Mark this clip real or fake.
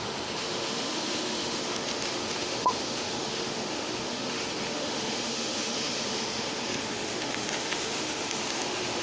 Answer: fake